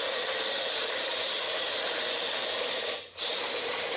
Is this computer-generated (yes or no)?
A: no